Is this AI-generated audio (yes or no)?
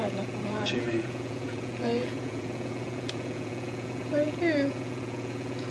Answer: yes